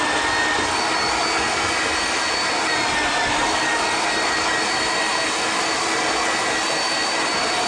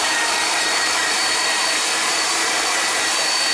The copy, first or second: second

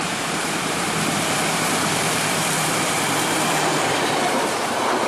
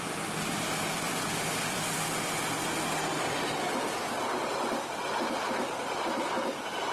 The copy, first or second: first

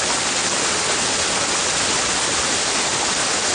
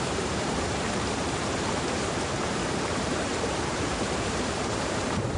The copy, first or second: second